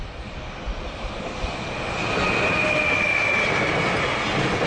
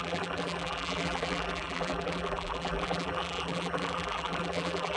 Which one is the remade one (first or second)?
second